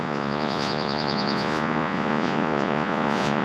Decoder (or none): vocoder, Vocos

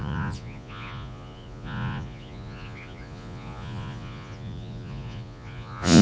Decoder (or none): vocoder, Vocos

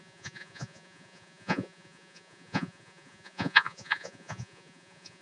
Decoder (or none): vocoder, Vocos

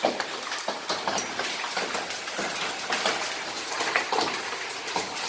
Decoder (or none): none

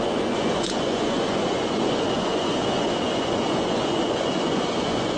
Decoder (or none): vocoder, Vocos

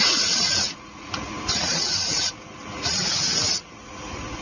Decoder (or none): vocoder, Vocos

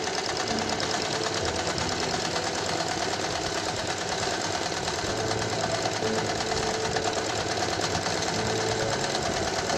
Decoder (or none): none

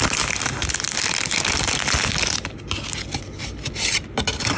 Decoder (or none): none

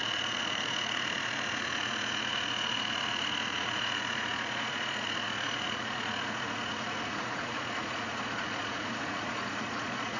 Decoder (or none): vocoder, Vocos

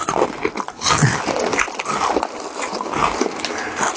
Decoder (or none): none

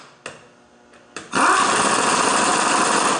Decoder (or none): none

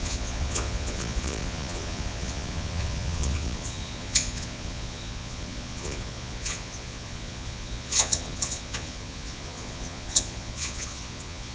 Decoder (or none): vocoder, Vocos